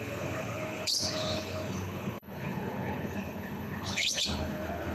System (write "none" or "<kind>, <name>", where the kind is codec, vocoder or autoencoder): codec, HILCodec